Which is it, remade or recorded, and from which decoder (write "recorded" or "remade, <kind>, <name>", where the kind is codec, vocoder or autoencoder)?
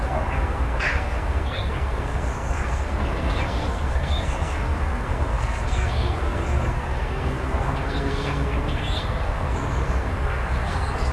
remade, codec, SNAC